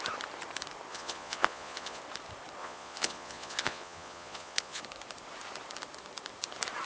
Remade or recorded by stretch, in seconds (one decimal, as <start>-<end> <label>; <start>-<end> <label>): 0.0-0.9 recorded; 0.9-2.0 remade; 2.0-2.6 recorded; 2.6-4.8 remade; 4.8-6.9 recorded